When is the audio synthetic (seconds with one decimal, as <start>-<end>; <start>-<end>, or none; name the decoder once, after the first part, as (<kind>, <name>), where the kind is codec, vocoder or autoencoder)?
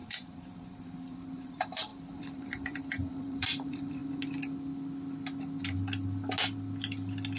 0.0-4.0 (vocoder, BigVGAN v2)